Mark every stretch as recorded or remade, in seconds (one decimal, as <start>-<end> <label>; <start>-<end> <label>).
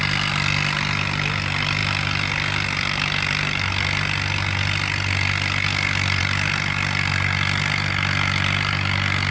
0.0-9.3 recorded